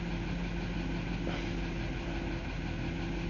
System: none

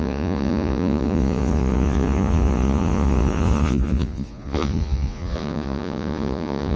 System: vocoder, Vocos